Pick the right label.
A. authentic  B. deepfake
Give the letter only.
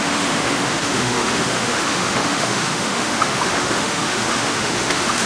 B